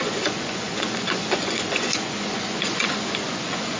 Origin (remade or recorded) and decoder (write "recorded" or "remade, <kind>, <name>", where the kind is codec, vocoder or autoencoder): remade, vocoder, Vocos